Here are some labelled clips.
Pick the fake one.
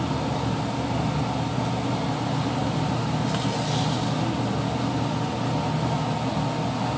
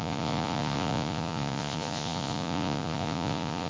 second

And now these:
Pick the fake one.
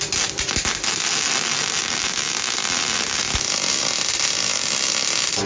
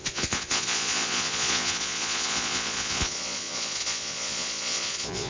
second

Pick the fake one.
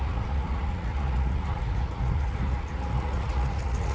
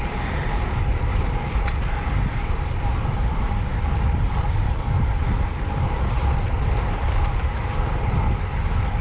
first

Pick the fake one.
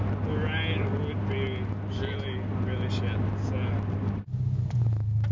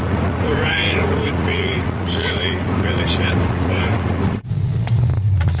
second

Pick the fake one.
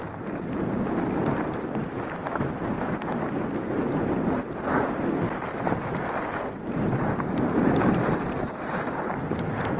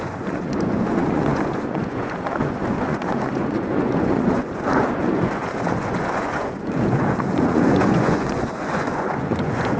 second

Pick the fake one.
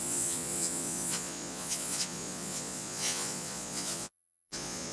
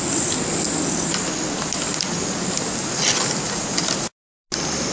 first